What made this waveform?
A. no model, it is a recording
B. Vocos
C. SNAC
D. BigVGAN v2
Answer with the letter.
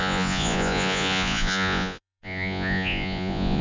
B